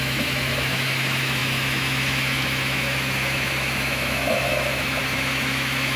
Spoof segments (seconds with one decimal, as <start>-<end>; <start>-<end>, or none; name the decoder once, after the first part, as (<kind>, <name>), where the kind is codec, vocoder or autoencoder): 0.0-6.0 (autoencoder, DAC-VAE)